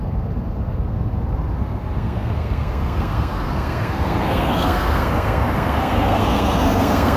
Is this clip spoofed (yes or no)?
yes